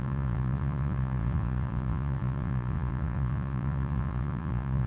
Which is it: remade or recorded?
remade